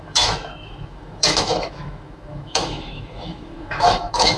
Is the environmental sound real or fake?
fake